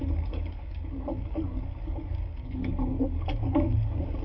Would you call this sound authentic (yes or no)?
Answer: no